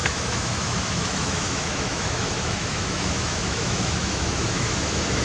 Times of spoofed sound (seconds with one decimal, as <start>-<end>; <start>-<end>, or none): 0.0-5.2